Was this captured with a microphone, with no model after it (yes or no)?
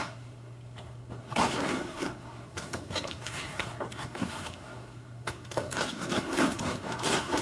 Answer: no